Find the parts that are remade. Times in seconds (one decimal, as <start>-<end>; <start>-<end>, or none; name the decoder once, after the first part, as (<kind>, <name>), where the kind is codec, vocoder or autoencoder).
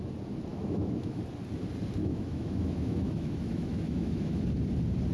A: 0.5-1.2 (autoencoder, DAC-VAE); 2.0-4.4